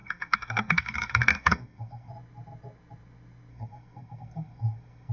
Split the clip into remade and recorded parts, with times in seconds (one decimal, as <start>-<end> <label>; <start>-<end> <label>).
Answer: 0.0-2.1 remade; 2.1-3.5 recorded; 3.5-5.1 remade